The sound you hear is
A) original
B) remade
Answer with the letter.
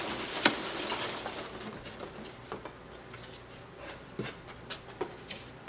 A